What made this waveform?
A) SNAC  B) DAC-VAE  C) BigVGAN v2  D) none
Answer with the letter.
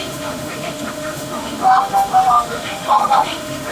B